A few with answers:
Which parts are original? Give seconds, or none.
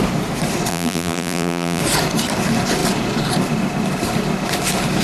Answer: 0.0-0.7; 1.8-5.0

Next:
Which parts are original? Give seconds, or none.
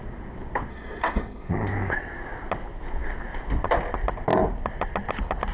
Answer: 0.0-0.7; 1.5-5.5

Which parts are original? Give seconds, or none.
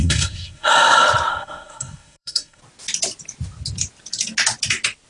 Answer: 0.7-1.3; 2.6-5.1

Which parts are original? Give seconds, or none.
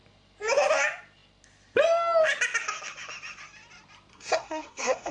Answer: 0.0-4.1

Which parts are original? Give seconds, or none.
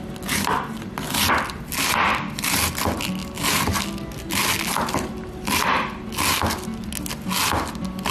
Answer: 0.0-8.1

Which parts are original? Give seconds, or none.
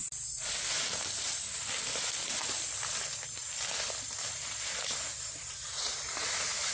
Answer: 0.0-5.7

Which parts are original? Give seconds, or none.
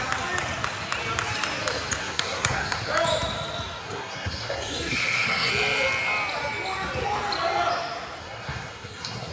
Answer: 0.0-2.0; 2.9-3.8; 5.5-8.2